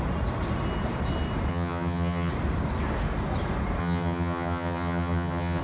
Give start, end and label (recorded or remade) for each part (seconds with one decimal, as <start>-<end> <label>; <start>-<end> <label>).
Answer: 0.0-1.5 recorded; 1.5-2.3 remade; 2.3-3.8 recorded; 3.8-5.6 remade